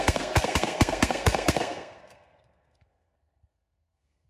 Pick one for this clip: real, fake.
fake